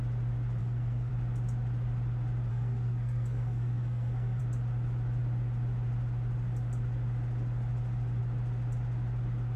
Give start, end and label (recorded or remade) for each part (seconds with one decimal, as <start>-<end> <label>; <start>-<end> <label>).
0.0-0.6 recorded; 0.6-1.1 remade; 1.1-2.5 recorded; 2.5-4.4 remade; 4.4-9.6 recorded